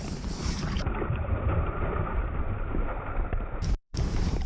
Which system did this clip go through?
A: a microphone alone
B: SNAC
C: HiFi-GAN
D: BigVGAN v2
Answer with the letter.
D